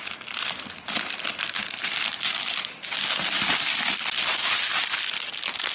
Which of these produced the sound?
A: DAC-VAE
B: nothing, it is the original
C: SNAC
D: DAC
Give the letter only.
B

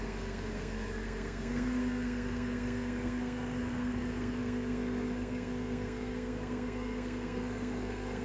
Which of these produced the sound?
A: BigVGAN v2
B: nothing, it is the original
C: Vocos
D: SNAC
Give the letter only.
D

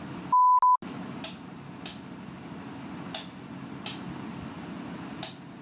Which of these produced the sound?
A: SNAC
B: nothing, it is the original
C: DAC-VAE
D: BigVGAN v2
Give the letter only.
B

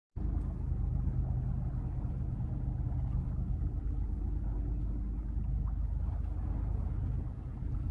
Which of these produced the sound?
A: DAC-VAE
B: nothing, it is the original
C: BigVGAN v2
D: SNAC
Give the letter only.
B